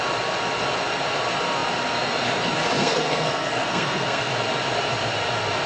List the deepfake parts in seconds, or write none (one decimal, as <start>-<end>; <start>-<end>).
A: 2.8-4.3